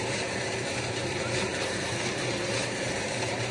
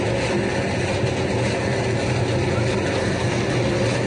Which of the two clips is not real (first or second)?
first